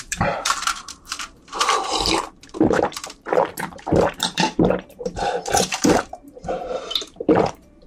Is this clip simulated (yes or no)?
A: yes